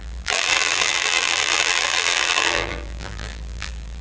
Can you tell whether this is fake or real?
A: fake